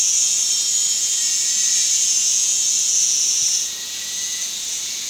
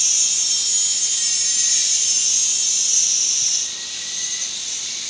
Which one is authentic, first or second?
second